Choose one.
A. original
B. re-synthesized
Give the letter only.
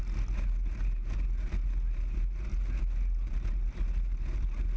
A